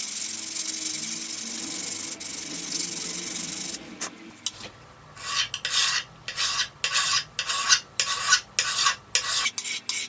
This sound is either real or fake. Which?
real